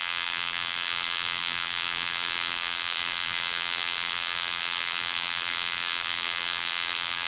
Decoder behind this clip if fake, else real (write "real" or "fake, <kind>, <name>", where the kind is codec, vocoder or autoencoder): fake, vocoder, BigVGAN v2